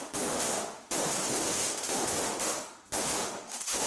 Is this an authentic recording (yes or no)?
no